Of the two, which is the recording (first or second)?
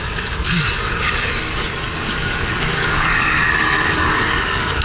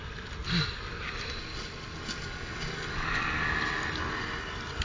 second